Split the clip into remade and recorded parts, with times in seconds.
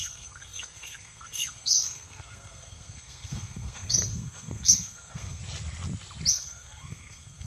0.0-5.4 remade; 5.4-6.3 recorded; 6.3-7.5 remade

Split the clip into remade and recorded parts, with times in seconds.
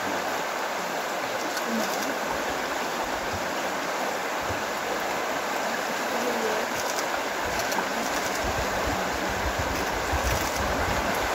0.0-2.9 recorded; 2.9-3.4 remade; 3.4-7.9 recorded; 7.9-9.2 remade; 9.2-11.3 recorded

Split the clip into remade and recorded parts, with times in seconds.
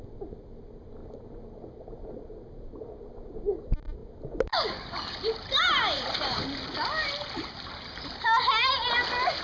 0.0-9.4 recorded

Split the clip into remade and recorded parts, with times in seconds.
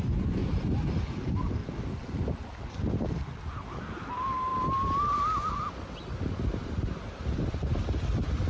0.0-8.5 recorded